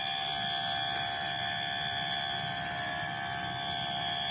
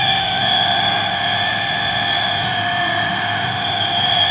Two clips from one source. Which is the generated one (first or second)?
second